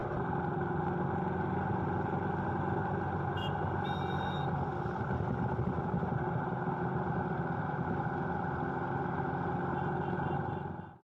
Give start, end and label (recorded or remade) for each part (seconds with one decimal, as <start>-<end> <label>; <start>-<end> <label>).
0.0-11.1 recorded